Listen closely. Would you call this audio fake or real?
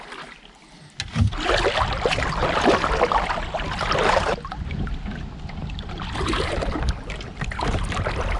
real